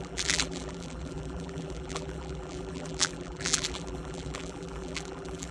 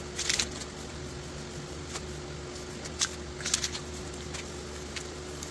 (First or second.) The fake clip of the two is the first